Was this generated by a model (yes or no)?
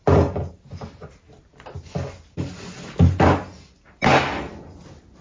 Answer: no